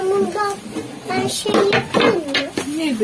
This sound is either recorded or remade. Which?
recorded